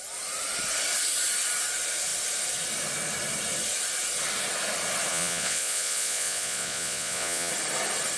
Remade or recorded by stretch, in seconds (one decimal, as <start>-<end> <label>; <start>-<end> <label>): 0.0-5.1 recorded; 5.1-7.5 remade; 7.5-8.2 recorded